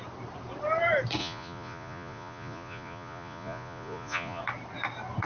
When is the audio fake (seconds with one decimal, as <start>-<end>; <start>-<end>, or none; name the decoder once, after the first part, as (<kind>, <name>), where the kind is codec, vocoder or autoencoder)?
1.2-4.4 (vocoder, Vocos)

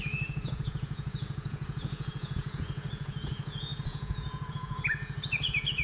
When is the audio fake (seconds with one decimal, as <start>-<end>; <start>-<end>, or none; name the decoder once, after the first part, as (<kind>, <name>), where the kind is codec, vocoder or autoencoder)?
0.0-5.8 (vocoder, Vocos)

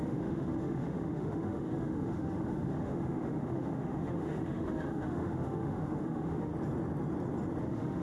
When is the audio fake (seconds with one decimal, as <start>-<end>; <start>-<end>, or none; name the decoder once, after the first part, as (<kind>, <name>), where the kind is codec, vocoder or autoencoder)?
0.0-6.5 (autoencoder, DAC-VAE); 7.6-8.0

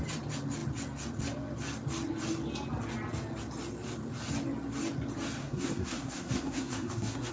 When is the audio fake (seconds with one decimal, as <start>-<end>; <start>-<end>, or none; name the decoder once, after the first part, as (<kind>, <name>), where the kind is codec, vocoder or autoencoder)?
5.4-7.3 (codec, SNAC)

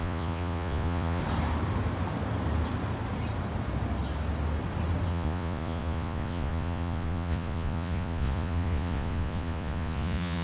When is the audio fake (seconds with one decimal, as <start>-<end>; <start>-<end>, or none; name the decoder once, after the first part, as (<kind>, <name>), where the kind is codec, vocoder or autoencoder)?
0.0-1.2 (vocoder, Vocos); 5.1-10.4

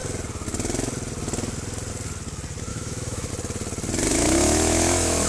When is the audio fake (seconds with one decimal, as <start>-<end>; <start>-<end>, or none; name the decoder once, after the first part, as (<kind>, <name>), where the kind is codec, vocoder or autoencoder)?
2.7-3.3 (autoencoder, DAC-VAE); 4.1-5.3

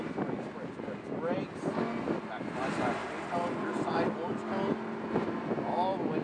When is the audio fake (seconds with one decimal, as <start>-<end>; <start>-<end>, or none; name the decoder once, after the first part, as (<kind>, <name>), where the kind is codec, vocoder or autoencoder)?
none